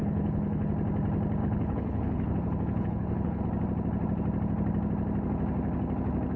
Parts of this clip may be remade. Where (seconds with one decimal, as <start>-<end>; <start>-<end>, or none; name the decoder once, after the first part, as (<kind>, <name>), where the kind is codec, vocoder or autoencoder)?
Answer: 0.0-0.7 (codec, HILCodec); 1.4-3.4